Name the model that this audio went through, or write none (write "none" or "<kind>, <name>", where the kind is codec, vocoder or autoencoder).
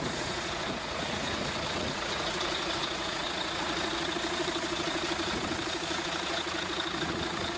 vocoder, Vocos